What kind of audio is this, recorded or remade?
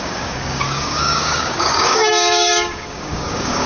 remade